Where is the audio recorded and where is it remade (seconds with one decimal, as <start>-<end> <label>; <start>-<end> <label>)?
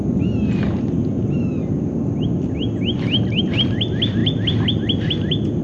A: 0.0-5.6 recorded